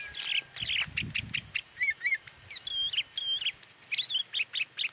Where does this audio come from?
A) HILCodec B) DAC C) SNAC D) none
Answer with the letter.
D